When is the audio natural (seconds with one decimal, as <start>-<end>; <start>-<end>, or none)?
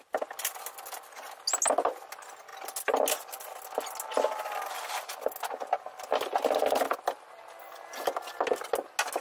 0.0-9.2